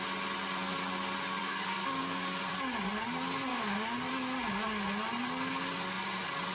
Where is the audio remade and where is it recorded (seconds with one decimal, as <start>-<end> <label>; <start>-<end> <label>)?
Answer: 0.0-1.4 recorded; 1.4-2.4 remade; 2.4-3.5 recorded; 3.5-4.1 remade; 4.1-6.5 recorded